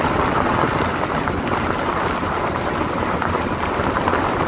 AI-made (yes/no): no